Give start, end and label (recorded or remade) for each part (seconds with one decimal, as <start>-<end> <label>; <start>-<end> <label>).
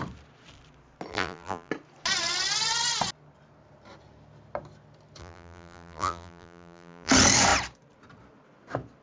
0.0-1.1 recorded; 1.1-1.7 remade; 1.7-5.2 recorded; 5.2-7.1 remade; 7.1-9.0 recorded